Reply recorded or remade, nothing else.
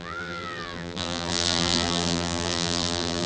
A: remade